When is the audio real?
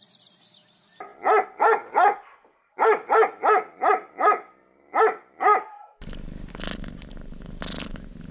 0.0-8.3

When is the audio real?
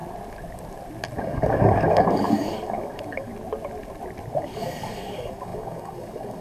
0.0-1.2; 3.3-4.4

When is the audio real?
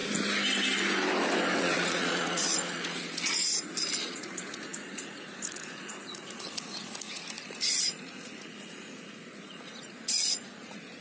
0.0-1.6; 3.4-4.0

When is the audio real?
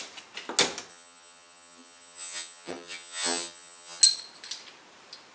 0.0-0.9; 4.0-5.3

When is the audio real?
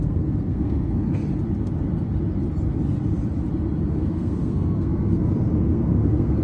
1.2-3.9